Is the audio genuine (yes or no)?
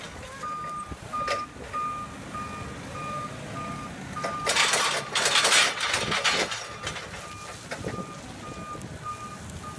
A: yes